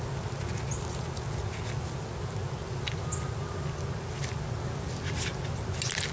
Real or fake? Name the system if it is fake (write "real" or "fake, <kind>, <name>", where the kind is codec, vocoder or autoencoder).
real